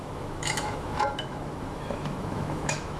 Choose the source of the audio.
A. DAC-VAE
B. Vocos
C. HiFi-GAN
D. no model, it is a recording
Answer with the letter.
A